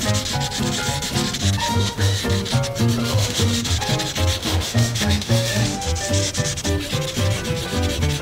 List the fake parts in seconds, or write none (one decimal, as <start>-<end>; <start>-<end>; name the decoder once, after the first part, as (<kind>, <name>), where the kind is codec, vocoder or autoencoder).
1.7-2.2 (autoencoder, DAC-VAE); 3.0-3.7; 4.4-5.9